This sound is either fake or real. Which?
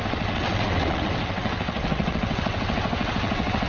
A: fake